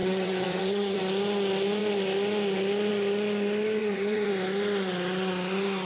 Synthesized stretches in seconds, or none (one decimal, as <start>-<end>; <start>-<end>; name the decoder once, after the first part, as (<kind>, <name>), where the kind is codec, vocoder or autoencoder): 0.0-1.0 (vocoder, HiFi-GAN); 3.8-4.3